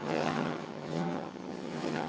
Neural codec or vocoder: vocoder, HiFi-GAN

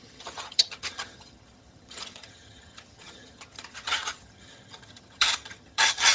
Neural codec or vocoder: vocoder, HiFi-GAN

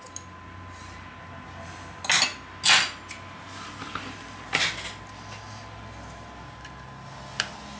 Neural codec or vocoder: none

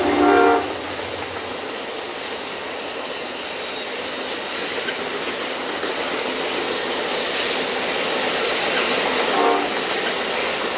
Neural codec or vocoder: none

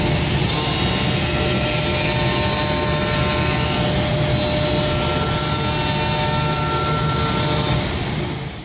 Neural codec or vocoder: none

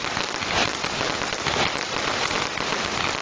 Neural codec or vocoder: none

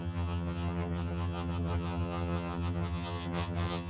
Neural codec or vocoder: vocoder, HiFi-GAN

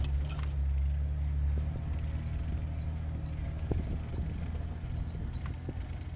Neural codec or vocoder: none